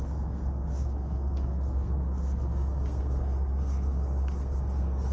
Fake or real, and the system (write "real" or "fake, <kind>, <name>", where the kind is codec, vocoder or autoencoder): fake, codec, SNAC